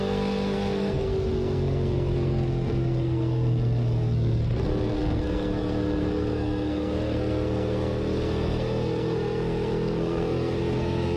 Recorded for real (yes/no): no